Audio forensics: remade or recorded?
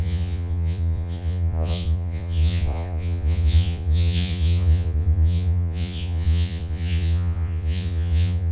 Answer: remade